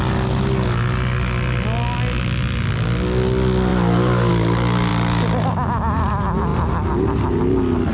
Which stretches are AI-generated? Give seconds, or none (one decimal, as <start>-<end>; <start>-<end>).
none